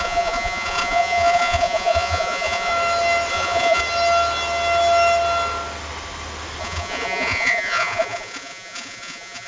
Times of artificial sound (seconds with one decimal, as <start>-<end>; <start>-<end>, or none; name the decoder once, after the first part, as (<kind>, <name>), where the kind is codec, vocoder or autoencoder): 0.0-2.7 (vocoder, Vocos); 3.3-3.8; 6.6-9.5